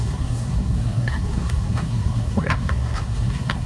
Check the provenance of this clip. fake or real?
fake